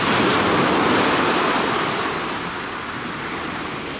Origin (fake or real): real